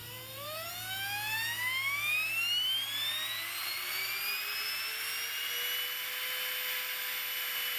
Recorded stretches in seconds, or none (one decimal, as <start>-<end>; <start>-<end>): 0.7-3.6; 4.2-7.8